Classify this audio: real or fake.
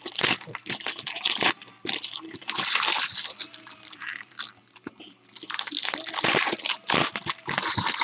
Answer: fake